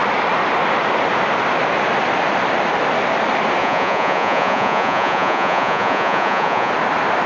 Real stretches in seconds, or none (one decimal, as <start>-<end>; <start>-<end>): 0.0-3.6; 6.7-7.3